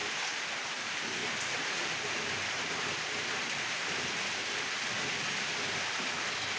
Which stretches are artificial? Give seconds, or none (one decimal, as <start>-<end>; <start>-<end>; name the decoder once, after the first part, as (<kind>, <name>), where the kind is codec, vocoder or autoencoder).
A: 1.2-4.6 (vocoder, BigVGAN v2)